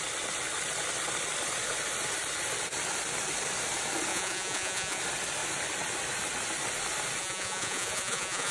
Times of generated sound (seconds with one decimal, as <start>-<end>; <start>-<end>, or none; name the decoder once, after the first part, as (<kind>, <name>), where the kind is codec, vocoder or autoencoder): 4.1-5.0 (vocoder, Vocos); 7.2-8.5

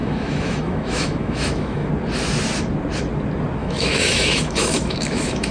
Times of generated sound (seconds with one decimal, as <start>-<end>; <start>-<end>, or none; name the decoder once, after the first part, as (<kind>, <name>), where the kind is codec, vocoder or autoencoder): 0.0-1.9 (autoencoder, DAC-VAE); 3.6-5.5

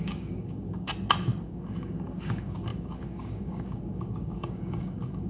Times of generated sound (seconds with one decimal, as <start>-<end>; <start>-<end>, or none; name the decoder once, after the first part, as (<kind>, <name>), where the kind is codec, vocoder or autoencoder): 0.0-0.9 (codec, DAC); 1.4-5.3

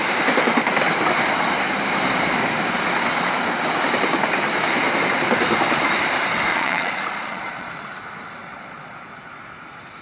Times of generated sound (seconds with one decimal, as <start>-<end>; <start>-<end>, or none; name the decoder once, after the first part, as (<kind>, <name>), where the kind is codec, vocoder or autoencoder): 6.5-7.7 (vocoder, Vocos); 8.4-9.1

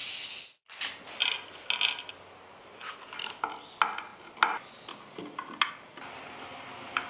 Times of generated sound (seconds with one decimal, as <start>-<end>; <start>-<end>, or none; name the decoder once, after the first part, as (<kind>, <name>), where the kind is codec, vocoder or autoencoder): none

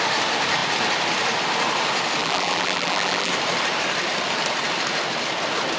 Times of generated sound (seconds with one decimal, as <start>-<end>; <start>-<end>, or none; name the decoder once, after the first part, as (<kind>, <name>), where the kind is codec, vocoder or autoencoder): 2.2-3.3 (vocoder, BigVGAN v2)

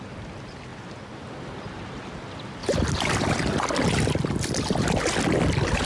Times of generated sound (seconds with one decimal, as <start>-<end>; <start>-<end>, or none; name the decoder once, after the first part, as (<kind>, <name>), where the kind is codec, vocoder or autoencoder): none

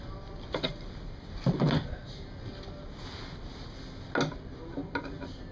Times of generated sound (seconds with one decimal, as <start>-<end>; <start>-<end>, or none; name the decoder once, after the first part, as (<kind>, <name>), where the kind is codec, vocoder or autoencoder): none